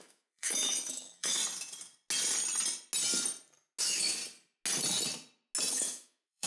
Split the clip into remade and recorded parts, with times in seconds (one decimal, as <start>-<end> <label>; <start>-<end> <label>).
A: 0.0-1.4 remade; 1.4-3.8 recorded; 3.8-4.2 remade; 4.2-5.7 recorded; 5.7-6.5 remade

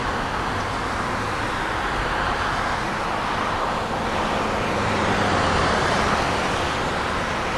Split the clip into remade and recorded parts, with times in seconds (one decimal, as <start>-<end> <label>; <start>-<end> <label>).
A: 0.0-7.6 recorded

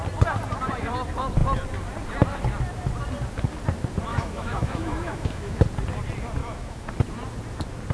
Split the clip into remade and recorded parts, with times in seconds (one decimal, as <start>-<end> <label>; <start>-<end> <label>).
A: 0.0-4.1 recorded; 4.1-5.6 remade; 5.6-6.4 recorded; 6.4-6.9 remade; 6.9-7.9 recorded

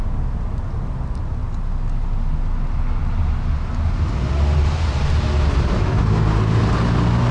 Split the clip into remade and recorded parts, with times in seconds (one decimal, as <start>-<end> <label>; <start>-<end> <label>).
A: 0.0-7.3 recorded

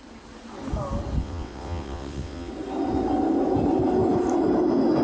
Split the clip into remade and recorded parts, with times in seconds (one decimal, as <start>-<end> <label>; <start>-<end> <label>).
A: 0.0-1.2 recorded; 1.2-2.5 remade; 2.5-5.0 recorded